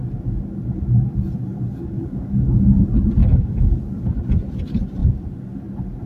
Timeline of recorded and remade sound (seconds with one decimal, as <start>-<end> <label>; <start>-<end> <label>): 0.0-1.4 recorded; 1.4-2.8 remade; 2.8-3.2 recorded; 3.2-3.8 remade; 3.8-6.1 recorded